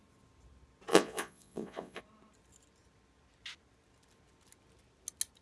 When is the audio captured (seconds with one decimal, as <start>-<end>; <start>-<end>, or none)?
0.0-0.9; 2.0-5.4